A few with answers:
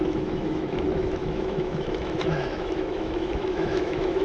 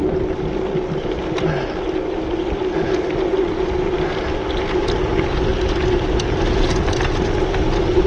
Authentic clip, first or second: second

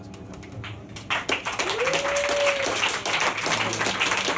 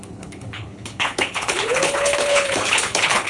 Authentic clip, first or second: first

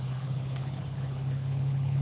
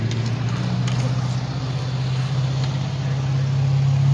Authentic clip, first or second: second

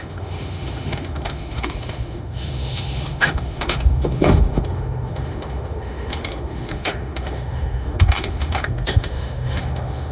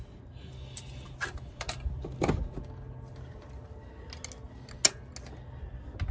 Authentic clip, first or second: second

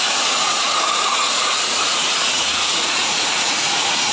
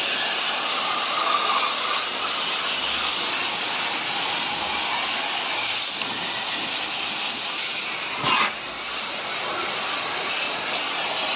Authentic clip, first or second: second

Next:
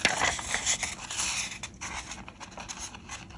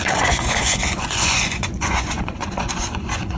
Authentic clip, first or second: first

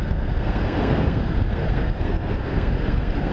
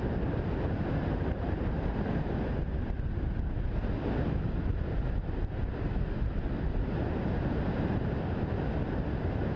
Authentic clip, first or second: second